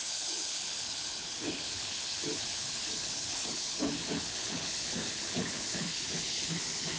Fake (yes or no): yes